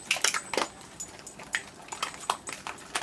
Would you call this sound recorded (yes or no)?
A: yes